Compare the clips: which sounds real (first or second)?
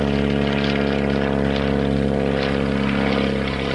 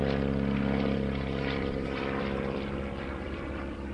first